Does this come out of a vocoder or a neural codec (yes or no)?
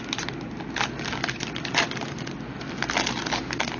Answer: no